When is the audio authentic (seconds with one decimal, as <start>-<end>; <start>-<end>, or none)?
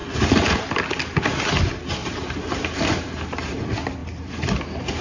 0.0-2.0; 3.6-4.0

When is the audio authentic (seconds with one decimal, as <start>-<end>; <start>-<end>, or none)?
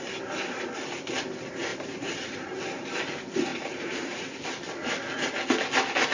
0.0-1.7; 3.0-3.5; 4.4-6.1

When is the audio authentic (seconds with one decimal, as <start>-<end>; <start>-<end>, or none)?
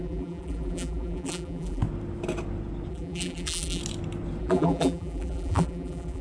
1.8-2.9; 3.8-4.4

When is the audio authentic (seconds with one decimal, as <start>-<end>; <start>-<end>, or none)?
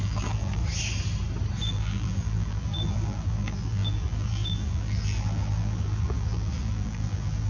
0.6-1.6